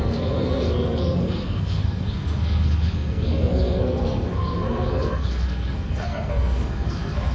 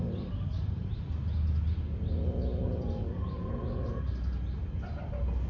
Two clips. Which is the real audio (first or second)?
second